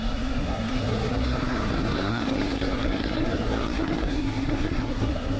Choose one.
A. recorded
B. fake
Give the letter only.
B